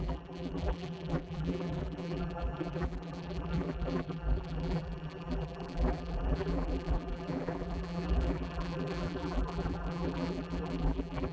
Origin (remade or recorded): remade